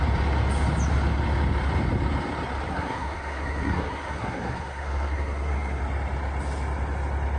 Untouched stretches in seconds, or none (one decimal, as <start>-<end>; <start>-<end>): 0.0-2.7; 5.8-7.4